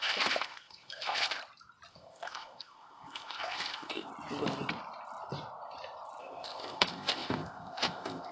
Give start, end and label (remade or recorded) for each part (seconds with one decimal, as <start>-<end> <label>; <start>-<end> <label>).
0.0-1.4 remade; 1.4-1.9 recorded; 1.9-4.1 remade; 4.1-6.2 recorded; 6.2-8.3 remade